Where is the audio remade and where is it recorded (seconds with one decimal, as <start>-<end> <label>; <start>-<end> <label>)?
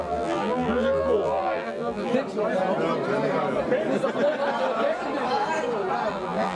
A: 0.0-2.1 remade; 2.1-6.1 recorded; 6.1-6.6 remade